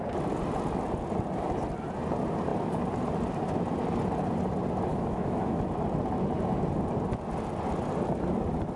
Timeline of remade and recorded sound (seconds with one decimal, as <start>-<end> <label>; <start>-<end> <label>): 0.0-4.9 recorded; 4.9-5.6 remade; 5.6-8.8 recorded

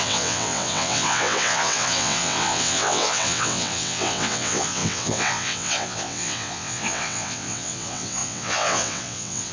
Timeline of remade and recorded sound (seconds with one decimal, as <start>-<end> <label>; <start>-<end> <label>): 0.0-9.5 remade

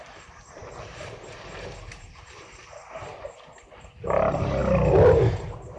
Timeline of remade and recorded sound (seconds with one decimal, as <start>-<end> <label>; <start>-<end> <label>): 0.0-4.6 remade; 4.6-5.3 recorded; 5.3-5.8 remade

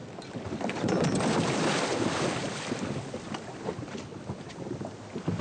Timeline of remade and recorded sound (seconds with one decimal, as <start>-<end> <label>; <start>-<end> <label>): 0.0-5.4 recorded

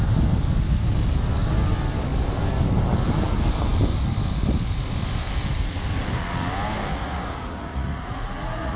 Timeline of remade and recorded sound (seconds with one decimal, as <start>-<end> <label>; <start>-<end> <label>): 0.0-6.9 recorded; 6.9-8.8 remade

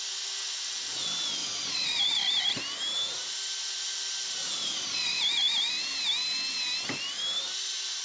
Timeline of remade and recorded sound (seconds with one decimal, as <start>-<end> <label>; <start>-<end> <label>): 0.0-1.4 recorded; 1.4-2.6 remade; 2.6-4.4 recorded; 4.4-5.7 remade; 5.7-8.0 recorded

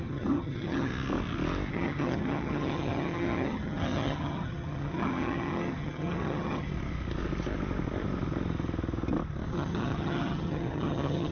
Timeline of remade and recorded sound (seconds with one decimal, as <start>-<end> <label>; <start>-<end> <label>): 0.0-0.9 remade; 0.9-1.7 recorded; 1.7-6.7 remade; 6.7-9.5 recorded; 9.5-11.3 remade

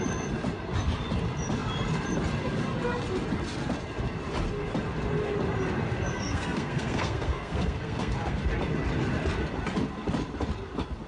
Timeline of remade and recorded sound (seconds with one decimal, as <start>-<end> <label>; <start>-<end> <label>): 0.0-6.1 recorded; 6.1-8.4 remade; 8.4-11.1 recorded